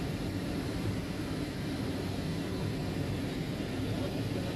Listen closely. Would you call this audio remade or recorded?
recorded